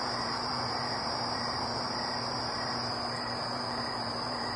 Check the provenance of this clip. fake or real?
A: fake